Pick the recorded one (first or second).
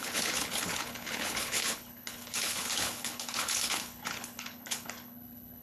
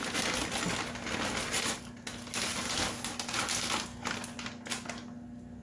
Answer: second